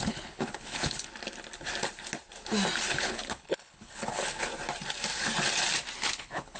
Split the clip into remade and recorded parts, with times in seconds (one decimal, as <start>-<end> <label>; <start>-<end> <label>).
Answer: 0.0-1.1 remade; 1.1-2.9 recorded; 2.9-4.5 remade; 4.5-6.1 recorded; 6.1-6.6 remade

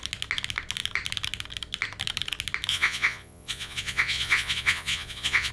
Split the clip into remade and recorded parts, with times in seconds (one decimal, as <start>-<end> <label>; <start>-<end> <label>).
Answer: 0.0-2.7 recorded; 2.7-5.5 remade

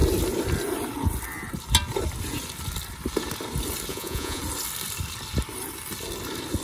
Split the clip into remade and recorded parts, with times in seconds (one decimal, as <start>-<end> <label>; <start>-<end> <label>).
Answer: 0.0-3.9 recorded; 3.9-4.4 remade; 4.4-6.6 recorded

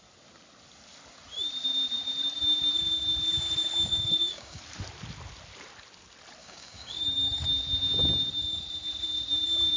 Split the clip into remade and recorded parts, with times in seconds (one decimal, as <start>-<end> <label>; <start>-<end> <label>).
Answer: 0.0-3.9 recorded; 3.9-4.6 remade; 4.6-6.4 recorded; 6.4-7.5 remade; 7.5-9.8 recorded

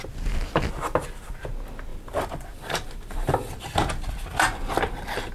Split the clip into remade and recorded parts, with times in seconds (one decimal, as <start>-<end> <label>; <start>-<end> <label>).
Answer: 0.0-1.9 recorded; 1.9-5.3 remade

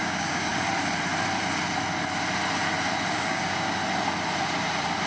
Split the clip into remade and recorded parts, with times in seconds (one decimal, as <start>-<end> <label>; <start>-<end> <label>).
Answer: 0.0-0.5 remade; 0.5-3.1 recorded; 3.1-3.8 remade; 3.8-5.1 recorded

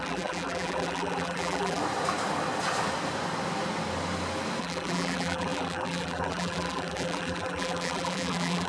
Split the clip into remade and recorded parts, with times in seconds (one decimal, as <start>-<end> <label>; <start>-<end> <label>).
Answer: 0.0-1.8 remade; 1.8-4.6 recorded; 4.6-8.7 remade

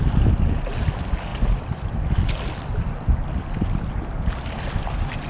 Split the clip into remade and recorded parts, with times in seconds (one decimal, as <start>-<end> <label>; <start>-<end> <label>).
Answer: 0.0-5.3 recorded